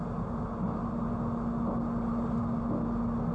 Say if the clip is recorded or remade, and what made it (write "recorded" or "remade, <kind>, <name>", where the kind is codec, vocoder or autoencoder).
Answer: recorded